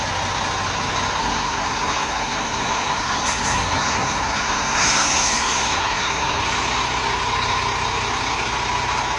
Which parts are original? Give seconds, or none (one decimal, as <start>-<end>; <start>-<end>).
0.0-1.2; 6.4-9.2